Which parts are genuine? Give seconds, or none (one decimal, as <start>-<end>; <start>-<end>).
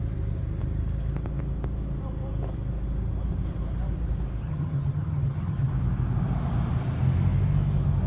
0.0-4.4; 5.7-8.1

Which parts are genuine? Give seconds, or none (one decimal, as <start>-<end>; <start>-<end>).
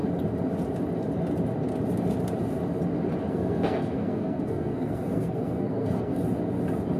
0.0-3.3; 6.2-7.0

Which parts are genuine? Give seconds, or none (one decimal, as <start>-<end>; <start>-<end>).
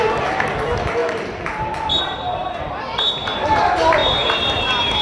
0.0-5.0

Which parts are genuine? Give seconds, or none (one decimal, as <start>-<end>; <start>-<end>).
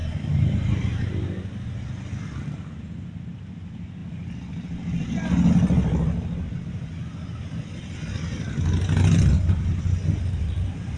0.0-11.0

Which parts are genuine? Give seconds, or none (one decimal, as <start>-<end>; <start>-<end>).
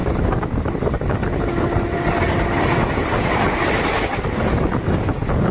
0.0-5.5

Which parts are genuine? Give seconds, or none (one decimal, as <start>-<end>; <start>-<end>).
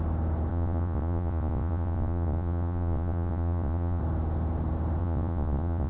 0.0-0.5; 4.0-5.0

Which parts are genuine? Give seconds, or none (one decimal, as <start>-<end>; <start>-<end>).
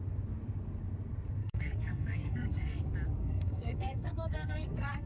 0.0-1.4; 2.8-3.2